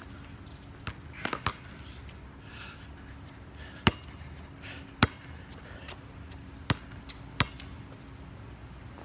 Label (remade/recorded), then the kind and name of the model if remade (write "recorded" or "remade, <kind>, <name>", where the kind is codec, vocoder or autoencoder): recorded